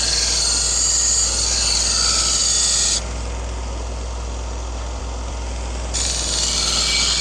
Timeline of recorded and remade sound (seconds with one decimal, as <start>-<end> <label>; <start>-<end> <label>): 0.0-7.2 recorded